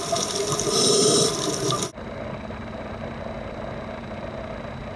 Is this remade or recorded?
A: recorded